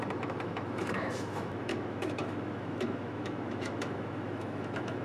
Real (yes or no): no